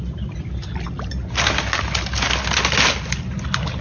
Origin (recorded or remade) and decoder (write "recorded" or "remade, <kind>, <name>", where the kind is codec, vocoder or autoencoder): recorded